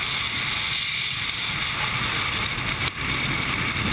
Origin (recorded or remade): recorded